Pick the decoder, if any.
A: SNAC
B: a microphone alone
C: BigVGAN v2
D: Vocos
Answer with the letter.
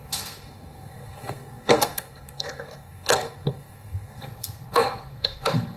A